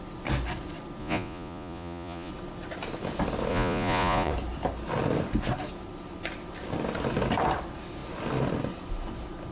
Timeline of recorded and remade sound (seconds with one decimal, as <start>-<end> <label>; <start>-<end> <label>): 0.0-1.0 recorded; 1.0-2.3 remade; 2.3-3.5 recorded; 3.5-4.3 remade; 4.3-9.5 recorded